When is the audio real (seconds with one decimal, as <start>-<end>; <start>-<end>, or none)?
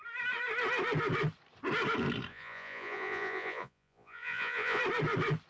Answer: 0.0-2.3; 4.8-5.5